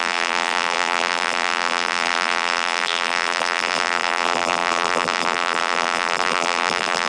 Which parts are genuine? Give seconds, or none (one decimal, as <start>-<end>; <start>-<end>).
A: none